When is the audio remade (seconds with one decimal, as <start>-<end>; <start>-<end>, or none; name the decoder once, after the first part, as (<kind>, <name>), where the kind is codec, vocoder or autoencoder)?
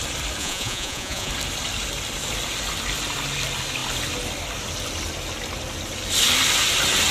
0.4-1.3 (vocoder, Vocos)